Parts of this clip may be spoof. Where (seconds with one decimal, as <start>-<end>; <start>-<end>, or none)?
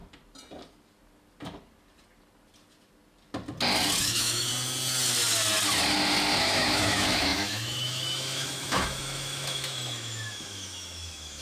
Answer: 4.0-4.5; 6.4-11.4